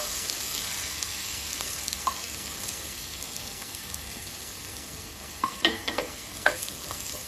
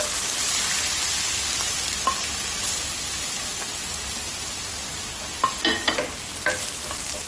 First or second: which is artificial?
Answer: first